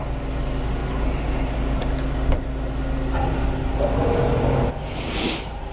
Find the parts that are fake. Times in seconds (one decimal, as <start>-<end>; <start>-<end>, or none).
none